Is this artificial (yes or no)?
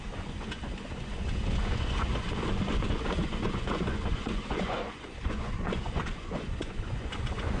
yes